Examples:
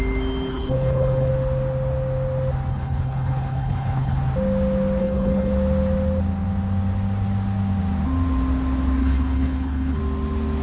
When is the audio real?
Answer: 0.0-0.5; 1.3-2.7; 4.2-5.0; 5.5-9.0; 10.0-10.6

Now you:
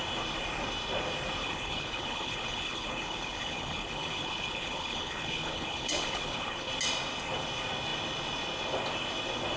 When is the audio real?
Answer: 0.0-1.4; 6.7-9.6

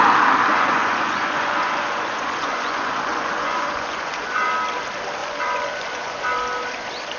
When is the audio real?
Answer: 0.0-0.5; 4.5-5.2; 6.2-7.2

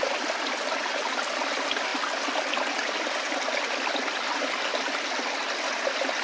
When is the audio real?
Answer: 0.0-6.2

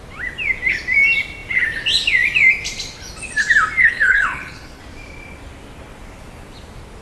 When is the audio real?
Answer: 0.0-3.8; 4.8-7.0